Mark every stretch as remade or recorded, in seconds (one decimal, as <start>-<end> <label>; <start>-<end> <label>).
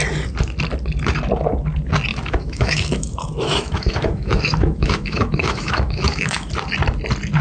0.0-2.1 recorded; 2.1-6.5 remade; 6.5-7.4 recorded